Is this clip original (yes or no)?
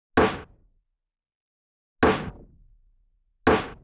yes